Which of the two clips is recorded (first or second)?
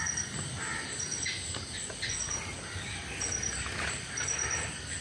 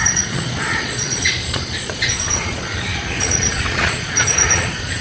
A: first